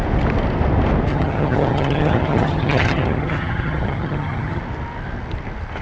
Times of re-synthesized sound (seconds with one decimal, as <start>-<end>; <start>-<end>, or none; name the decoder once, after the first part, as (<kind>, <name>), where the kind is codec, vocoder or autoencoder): 1.1-4.6 (vocoder, HiFi-GAN)